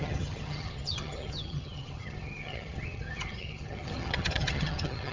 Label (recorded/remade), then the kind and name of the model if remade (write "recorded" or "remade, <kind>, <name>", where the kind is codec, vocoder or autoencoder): remade, vocoder, HiFi-GAN